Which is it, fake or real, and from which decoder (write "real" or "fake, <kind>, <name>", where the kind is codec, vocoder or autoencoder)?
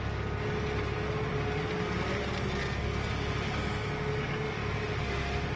real